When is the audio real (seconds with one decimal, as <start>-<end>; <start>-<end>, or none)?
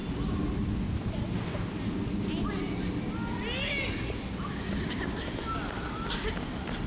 0.0-6.9